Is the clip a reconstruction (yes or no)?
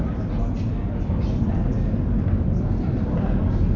no